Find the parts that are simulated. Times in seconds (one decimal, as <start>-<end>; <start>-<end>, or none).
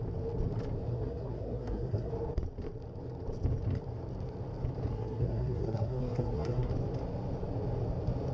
0.9-2.1; 4.9-6.7